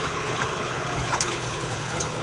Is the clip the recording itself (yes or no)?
no